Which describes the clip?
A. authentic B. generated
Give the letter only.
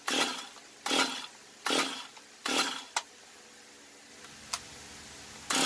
A